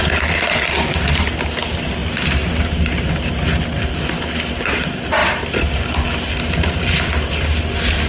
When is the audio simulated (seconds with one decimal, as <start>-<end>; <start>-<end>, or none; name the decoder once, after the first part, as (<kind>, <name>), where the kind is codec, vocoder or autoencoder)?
2.0-3.1 (vocoder, BigVGAN v2); 5.2-5.8